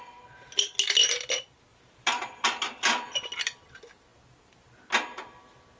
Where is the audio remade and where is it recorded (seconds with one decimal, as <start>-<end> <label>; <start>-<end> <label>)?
0.0-5.8 recorded